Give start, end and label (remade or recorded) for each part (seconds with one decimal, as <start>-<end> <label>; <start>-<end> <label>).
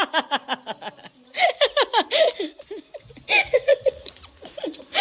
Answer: 0.0-0.4 remade; 0.4-3.4 recorded; 3.4-5.0 remade